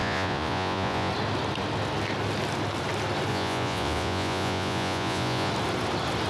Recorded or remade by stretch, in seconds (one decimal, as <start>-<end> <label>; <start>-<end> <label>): 0.0-1.1 remade; 1.1-3.3 recorded; 3.3-5.5 remade; 5.5-6.3 recorded